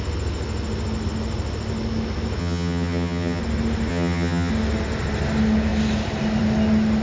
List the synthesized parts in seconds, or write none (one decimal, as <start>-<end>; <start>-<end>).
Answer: 2.4-3.4; 3.9-4.5